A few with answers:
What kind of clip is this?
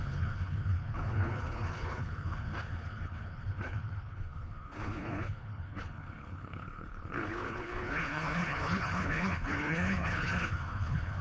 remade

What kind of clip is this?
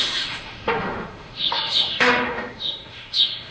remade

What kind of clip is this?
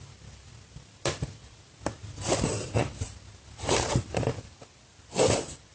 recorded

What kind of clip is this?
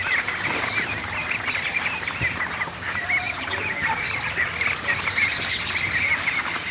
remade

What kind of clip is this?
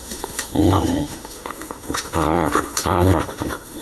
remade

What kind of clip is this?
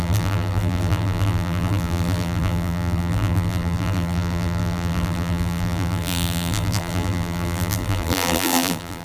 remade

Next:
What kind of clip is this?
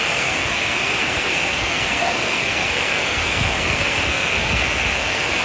remade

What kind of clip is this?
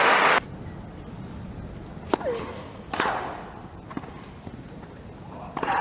recorded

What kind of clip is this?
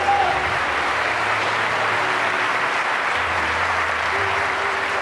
remade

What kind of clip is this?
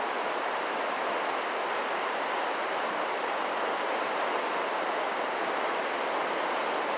remade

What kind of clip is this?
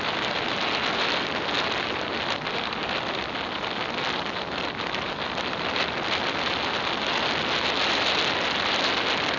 recorded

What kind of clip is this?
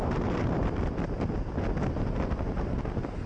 recorded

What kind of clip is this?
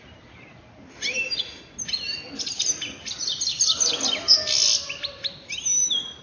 recorded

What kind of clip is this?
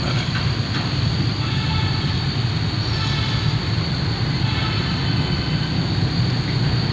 recorded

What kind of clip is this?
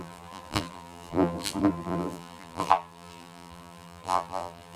remade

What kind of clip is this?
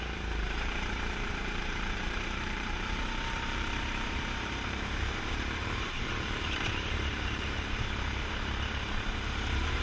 remade